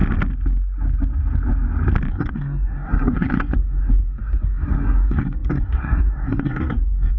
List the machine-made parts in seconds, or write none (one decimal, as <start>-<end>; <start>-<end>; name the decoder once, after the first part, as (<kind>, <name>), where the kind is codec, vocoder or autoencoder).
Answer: 2.1-7.2 (codec, SNAC)